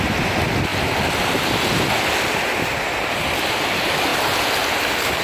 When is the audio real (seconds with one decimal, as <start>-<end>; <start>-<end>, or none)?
0.7-2.2; 4.1-5.2

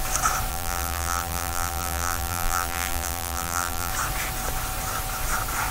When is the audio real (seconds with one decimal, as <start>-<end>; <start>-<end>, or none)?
0.0-0.5; 3.9-5.7

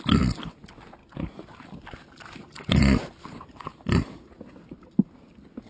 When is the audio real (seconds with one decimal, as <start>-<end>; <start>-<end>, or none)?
0.0-1.0; 4.4-5.7

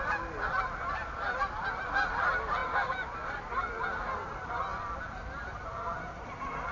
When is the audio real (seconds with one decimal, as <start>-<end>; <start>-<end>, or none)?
0.0-2.6; 3.4-4.7

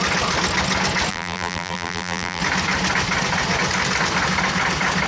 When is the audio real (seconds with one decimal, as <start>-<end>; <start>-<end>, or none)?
0.0-1.1; 2.4-5.1

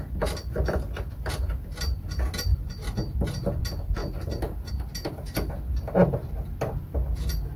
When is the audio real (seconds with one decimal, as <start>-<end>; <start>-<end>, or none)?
0.0-4.0; 4.7-7.6

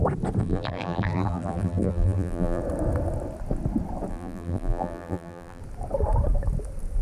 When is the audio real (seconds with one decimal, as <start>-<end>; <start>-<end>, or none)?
0.0-0.4; 2.6-4.1; 5.6-7.0

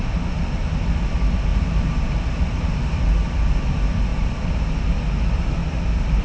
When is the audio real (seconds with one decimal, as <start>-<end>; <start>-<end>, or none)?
0.0-1.5; 3.1-4.1; 5.0-5.6